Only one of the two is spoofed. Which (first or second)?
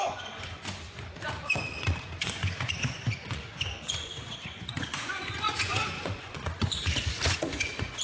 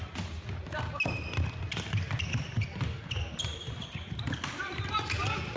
first